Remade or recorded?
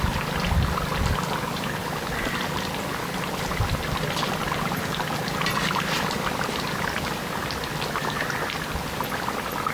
recorded